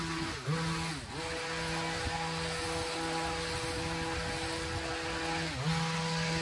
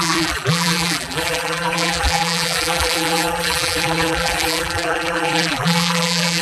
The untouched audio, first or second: first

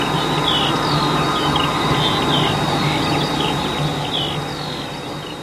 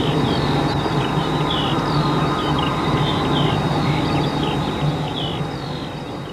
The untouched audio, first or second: first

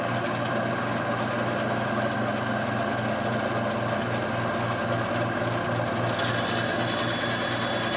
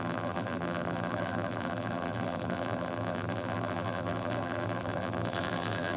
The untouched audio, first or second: first